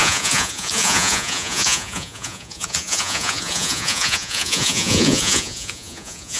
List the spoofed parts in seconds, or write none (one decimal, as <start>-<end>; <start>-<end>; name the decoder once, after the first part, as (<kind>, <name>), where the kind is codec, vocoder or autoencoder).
0.0-6.4 (vocoder, Vocos)